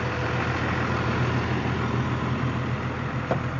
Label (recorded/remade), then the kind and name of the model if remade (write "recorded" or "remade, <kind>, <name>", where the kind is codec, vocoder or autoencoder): recorded